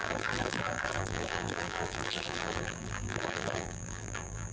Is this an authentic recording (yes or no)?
no